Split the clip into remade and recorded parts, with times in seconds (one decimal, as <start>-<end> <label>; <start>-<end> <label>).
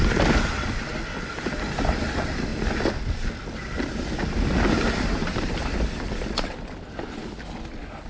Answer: 0.0-2.5 remade; 2.5-4.9 recorded; 4.9-7.2 remade; 7.2-8.1 recorded